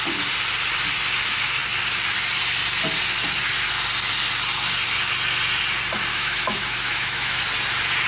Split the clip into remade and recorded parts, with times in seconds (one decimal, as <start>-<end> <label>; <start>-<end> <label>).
0.0-6.1 recorded; 6.1-7.4 remade; 7.4-8.1 recorded